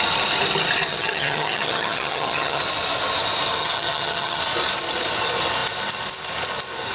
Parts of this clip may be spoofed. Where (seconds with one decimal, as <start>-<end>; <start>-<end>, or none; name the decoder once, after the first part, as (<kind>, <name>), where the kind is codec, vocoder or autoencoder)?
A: 0.9-2.6 (vocoder, HiFi-GAN); 3.6-4.4